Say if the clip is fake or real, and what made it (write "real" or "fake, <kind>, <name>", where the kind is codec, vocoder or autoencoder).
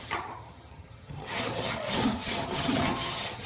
fake, vocoder, HiFi-GAN